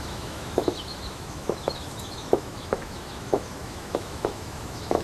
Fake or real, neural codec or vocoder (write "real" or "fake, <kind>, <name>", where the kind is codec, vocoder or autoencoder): fake, autoencoder, DAC-VAE